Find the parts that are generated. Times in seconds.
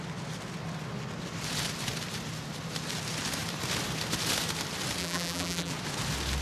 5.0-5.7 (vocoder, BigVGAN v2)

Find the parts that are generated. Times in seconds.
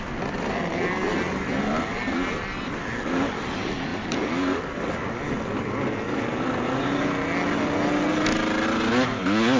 none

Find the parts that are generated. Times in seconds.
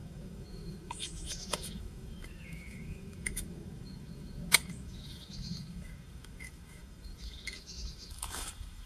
0.0-8.9 (autoencoder, DAC-VAE)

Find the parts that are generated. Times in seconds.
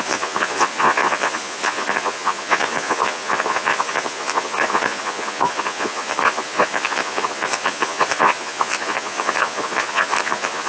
0.0-10.7 (vocoder, Vocos)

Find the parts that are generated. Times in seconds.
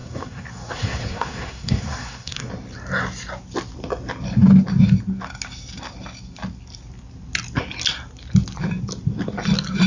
0.0-2.5 (codec, SNAC)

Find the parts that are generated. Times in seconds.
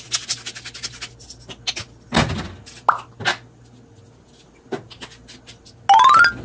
none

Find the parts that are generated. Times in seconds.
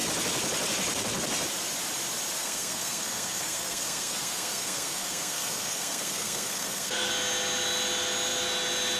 2.4-7.1 (codec, SNAC)